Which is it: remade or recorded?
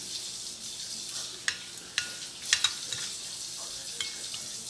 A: recorded